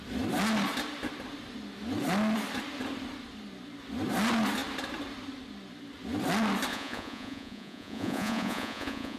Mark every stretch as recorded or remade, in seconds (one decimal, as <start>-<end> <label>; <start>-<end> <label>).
0.0-6.7 recorded; 6.7-9.2 remade